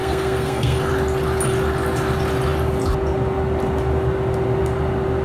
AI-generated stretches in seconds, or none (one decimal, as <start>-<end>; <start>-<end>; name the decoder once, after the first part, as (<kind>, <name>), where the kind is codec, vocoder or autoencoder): 0.0-0.9 (codec, SNAC)